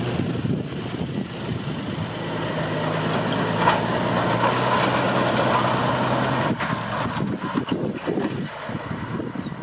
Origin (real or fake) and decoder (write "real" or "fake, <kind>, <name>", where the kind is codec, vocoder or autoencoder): real